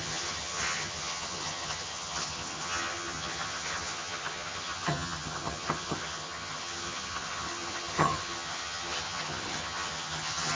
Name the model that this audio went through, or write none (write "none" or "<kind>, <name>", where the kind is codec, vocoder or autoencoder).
vocoder, HiFi-GAN